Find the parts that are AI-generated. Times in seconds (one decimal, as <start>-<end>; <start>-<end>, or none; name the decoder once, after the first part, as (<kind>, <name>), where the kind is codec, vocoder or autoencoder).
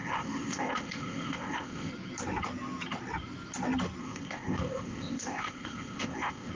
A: 0.0-1.9 (codec, ZipCodec); 4.0-6.5